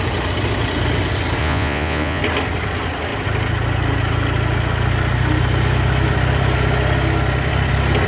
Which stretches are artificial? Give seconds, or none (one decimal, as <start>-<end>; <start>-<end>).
1.4-2.2